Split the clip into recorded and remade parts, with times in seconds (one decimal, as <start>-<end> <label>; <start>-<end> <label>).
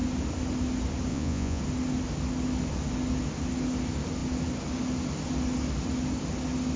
0.0-1.1 recorded; 1.1-1.6 remade; 1.6-6.8 recorded